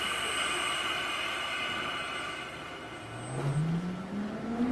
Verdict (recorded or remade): recorded